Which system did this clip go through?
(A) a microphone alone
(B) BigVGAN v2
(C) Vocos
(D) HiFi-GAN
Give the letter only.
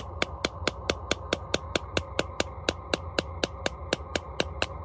A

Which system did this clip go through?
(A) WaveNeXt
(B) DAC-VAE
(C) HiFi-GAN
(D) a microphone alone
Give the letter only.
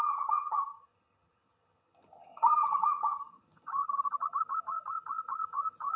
C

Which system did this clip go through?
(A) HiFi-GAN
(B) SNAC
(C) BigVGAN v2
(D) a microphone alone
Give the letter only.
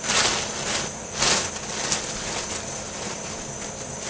D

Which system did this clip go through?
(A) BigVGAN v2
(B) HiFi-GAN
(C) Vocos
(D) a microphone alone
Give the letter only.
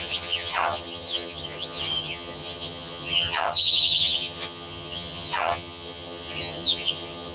B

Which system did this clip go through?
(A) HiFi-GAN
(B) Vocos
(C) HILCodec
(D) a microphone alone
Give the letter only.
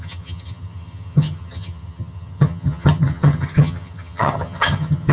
A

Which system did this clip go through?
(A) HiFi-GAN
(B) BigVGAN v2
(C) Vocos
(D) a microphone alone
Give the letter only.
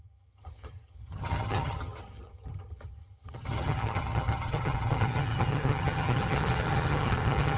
A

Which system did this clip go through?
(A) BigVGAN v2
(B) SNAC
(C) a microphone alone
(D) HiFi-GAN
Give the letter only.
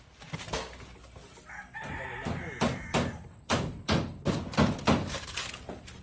C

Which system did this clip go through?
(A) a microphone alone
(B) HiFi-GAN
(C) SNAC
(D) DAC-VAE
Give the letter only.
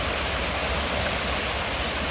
A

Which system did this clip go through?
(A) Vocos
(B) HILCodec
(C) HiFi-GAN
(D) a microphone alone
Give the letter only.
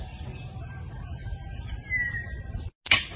D